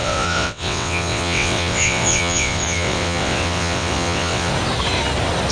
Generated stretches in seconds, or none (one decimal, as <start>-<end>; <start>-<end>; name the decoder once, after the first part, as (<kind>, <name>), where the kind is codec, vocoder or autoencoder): 0.0-4.5 (vocoder, WaveNeXt)